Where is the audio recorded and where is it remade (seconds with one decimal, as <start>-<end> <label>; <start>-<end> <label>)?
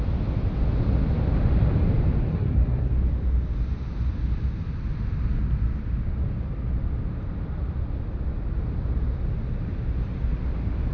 0.0-2.3 recorded; 2.3-2.9 remade; 2.9-10.9 recorded